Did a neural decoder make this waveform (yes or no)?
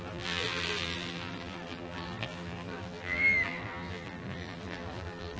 yes